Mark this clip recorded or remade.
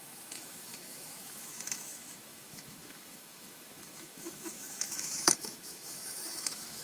remade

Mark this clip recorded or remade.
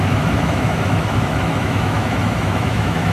remade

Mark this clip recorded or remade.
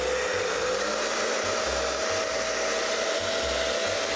recorded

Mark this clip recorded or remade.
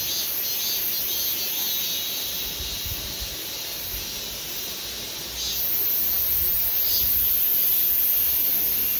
recorded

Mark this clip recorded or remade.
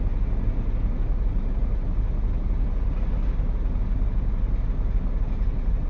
recorded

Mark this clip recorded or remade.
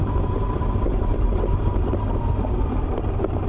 recorded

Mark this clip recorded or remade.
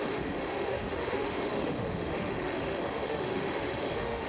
remade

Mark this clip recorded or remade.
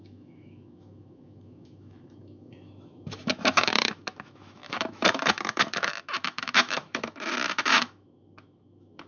remade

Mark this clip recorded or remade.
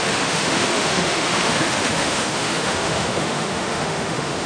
remade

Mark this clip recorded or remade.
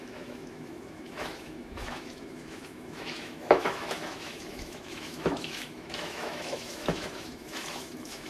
remade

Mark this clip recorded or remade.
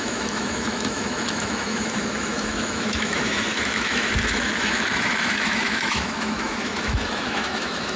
remade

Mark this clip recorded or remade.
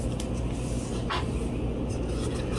recorded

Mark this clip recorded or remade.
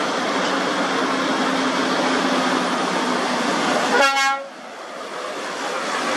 recorded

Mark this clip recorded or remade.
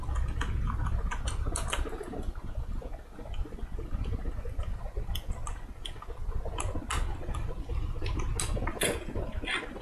recorded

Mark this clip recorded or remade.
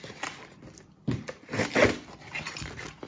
recorded